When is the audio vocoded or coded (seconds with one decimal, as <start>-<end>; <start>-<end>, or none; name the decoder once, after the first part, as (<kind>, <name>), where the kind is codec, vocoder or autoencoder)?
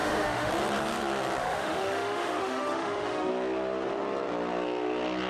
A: 0.0-0.5 (autoencoder, DAC-VAE); 1.4-3.3